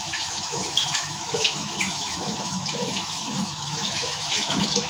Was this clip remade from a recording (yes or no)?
yes